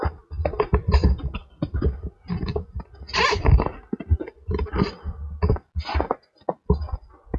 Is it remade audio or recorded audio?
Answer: recorded